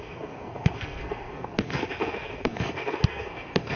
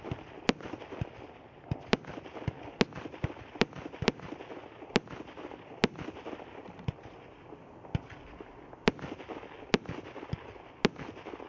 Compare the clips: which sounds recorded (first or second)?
second